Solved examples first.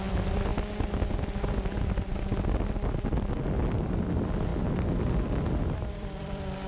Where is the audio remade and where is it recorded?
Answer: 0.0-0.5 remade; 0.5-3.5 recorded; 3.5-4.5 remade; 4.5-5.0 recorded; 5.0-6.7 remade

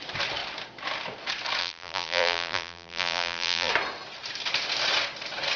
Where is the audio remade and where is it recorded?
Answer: 0.0-1.6 recorded; 1.6-3.7 remade; 3.7-5.6 recorded

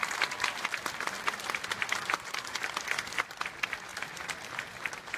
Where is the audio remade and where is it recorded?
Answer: 0.0-5.2 recorded

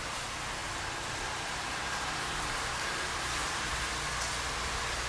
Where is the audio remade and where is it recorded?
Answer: 0.0-1.8 recorded; 1.8-3.6 remade; 3.6-5.1 recorded

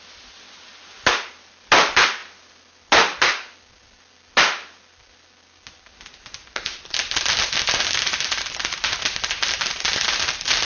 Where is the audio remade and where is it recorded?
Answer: 0.0-10.6 recorded

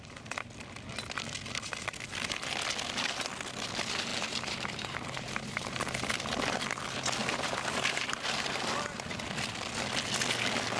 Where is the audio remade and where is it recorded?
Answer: 0.0-4.1 recorded; 4.1-6.2 remade; 6.2-7.2 recorded; 7.2-8.7 remade; 8.7-10.8 recorded